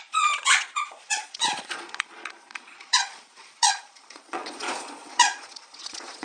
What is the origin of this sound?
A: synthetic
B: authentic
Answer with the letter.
A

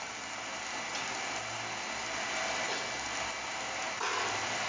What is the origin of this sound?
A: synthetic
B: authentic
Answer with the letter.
B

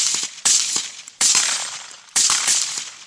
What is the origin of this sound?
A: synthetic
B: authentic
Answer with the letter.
A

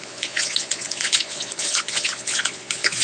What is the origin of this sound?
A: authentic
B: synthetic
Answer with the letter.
B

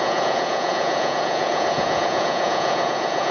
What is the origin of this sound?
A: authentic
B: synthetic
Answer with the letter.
B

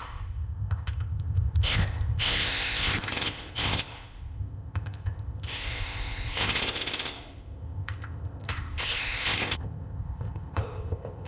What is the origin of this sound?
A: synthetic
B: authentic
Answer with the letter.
A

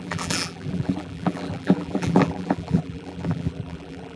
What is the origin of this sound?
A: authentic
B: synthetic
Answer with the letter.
B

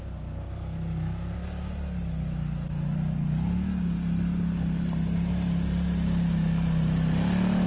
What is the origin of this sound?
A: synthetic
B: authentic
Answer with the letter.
B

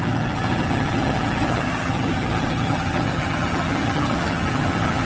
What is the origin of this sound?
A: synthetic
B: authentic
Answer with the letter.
A